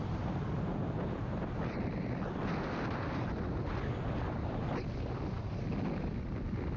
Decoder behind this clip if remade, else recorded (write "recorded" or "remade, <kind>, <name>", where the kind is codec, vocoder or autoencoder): recorded